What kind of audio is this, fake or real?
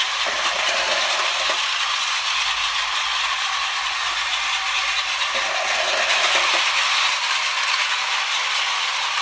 real